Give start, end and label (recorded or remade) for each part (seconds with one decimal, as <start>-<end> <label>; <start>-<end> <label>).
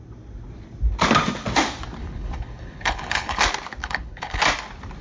0.0-2.0 recorded; 2.0-3.4 remade; 3.4-3.8 recorded; 3.8-4.4 remade; 4.4-5.0 recorded